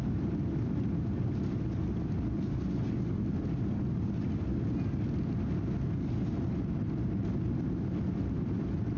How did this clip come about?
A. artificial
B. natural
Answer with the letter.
B